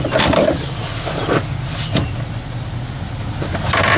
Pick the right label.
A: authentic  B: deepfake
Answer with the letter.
A